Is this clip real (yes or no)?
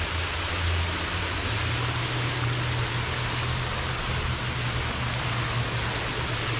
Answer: yes